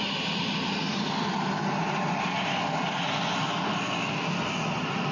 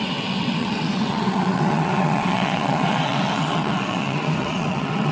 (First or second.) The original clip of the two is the first